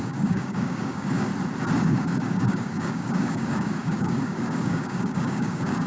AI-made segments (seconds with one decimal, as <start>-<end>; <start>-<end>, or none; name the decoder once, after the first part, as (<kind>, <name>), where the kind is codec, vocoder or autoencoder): 0.0-1.3 (codec, DAC); 1.8-5.9